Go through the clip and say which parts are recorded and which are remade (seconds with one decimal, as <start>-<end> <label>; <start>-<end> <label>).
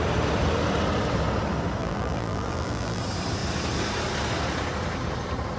0.0-1.8 recorded; 1.8-3.0 remade; 3.0-5.6 recorded